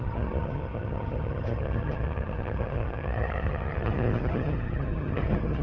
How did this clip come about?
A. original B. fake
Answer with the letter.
B